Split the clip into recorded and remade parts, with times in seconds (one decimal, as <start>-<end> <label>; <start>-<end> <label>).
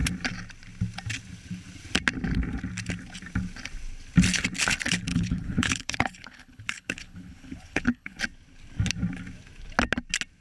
0.0-5.1 recorded; 5.1-8.2 remade; 8.2-10.4 recorded